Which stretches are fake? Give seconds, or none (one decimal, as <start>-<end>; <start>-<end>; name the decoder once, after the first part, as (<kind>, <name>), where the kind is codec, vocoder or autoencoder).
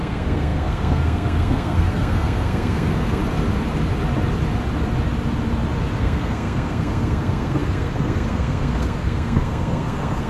0.0-3.2 (codec, SNAC); 6.0-10.3